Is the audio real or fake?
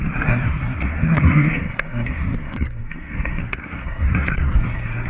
fake